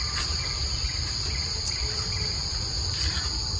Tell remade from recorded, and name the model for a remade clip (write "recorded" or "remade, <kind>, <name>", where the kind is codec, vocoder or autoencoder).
remade, vocoder, BigVGAN v2